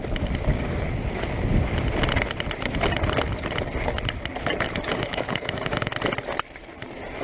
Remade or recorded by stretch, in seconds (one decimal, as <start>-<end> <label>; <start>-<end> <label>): 0.0-4.9 recorded; 4.9-5.9 remade; 5.9-7.2 recorded